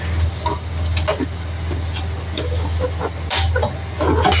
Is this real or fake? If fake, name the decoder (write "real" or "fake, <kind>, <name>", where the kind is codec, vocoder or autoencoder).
real